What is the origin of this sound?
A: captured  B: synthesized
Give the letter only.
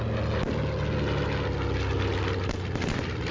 A